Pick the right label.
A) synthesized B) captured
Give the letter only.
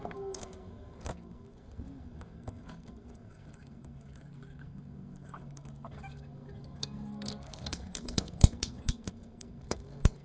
A